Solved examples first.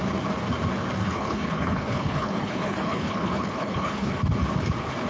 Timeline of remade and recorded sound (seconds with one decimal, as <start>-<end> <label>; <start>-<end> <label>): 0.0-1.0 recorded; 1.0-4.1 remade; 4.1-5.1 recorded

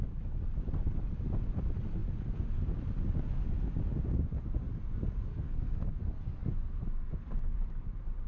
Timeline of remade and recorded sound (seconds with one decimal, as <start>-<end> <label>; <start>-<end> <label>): 0.0-5.3 recorded; 5.3-5.9 remade; 5.9-8.3 recorded

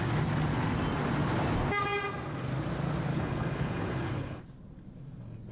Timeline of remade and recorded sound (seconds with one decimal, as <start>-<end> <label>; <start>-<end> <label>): 0.0-3.1 recorded; 3.1-4.4 remade; 4.4-5.5 recorded

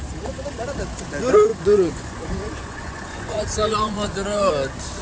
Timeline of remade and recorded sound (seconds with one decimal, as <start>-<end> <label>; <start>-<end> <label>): 0.0-1.5 recorded; 1.5-4.5 remade; 4.5-5.0 recorded

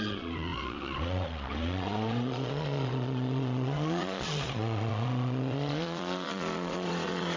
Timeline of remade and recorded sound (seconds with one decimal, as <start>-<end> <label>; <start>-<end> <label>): 0.0-7.4 remade